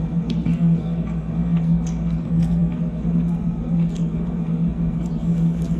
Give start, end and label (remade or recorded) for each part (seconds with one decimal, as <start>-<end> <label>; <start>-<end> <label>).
0.0-5.8 remade